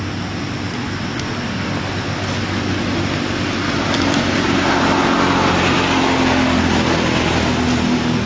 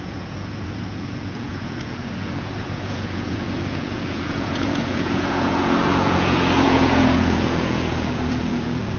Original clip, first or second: first